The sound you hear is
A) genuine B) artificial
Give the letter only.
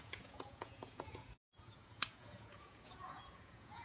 B